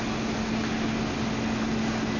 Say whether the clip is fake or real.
real